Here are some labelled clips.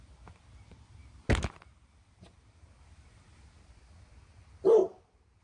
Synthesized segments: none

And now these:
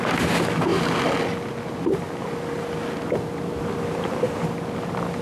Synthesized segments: none

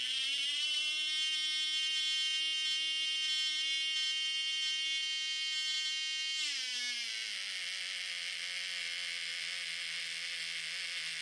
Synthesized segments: none

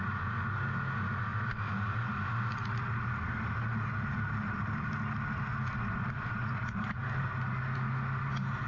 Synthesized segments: 1.3-4.9 (vocoder, BigVGAN v2); 6.4-7.2

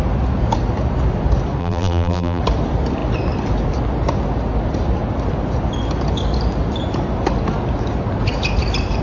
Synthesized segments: 1.6-2.4 (vocoder, BigVGAN v2)

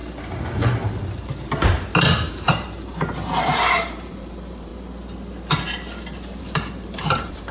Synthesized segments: 2.3-4.7 (vocoder, BigVGAN v2); 6.4-7.5

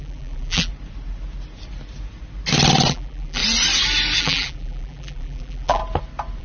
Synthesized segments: 0.0-0.7 (vocoder, BigVGAN v2); 2.9-3.4; 4.2-5.8